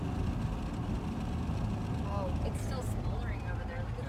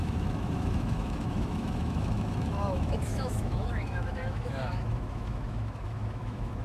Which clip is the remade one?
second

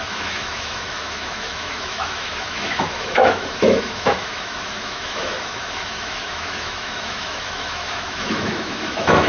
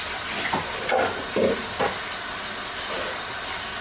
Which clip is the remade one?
first